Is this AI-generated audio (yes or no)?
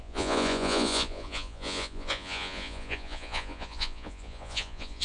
yes